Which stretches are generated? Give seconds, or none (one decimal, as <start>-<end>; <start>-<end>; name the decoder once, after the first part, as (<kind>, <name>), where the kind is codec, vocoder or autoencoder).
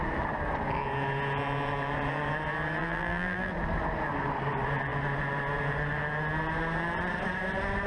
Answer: 2.8-3.5 (vocoder, BigVGAN v2)